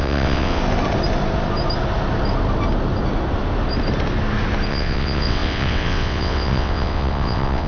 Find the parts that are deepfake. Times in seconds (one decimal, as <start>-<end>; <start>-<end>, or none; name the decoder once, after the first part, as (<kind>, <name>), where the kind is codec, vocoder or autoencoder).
0.0-0.6 (vocoder, WaveNeXt); 4.7-7.7